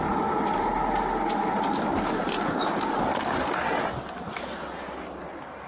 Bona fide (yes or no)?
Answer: yes